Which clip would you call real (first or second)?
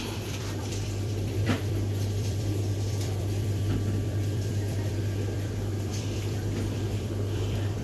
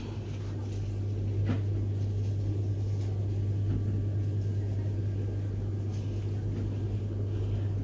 second